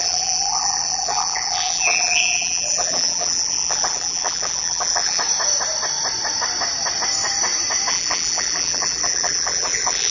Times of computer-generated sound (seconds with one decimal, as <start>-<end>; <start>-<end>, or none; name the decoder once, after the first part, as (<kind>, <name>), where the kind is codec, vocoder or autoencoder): 0.0-5.2 (vocoder, BigVGAN v2); 7.9-10.1